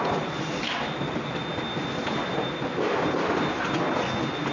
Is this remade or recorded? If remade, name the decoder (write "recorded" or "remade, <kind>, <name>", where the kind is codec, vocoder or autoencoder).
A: recorded